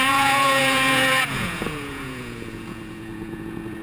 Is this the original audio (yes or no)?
no